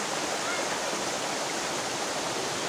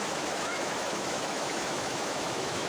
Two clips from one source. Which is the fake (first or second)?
second